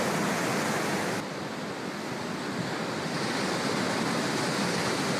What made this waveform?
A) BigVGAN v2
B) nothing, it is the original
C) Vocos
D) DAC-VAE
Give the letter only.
B